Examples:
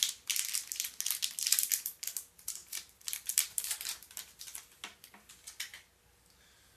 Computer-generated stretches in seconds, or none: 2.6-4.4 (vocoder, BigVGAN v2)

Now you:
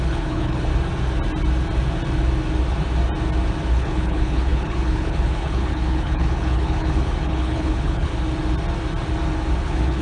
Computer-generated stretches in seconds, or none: 0.0-0.7 (codec, HILCodec); 3.7-8.1; 9.6-10.0